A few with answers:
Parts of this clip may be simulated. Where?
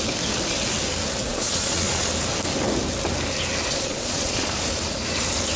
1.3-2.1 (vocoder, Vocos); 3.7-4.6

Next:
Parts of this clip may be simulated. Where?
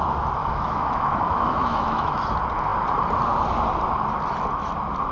0.4-2.1 (autoencoder, DAC-VAE)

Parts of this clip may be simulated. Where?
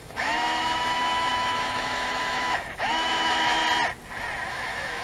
0.0-3.6 (autoencoder, DAC-VAE); 4.5-5.0